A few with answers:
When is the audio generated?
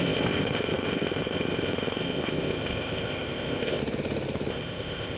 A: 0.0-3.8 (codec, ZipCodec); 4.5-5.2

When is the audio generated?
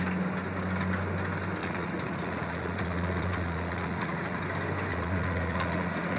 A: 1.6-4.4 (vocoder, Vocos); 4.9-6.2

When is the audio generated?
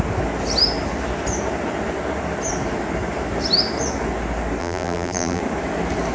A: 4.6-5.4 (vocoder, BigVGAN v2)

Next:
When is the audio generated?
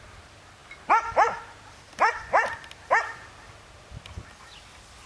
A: none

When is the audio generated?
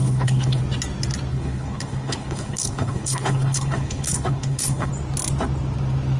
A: 0.0-0.6 (codec, HILCodec); 1.3-4.9